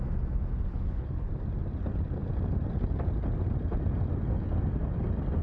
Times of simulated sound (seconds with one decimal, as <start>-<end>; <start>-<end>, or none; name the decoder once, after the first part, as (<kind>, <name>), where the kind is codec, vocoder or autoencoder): 0.7-1.3 (codec, HILCodec)